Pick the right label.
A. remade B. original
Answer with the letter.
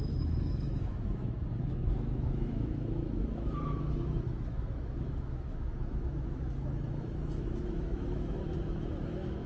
A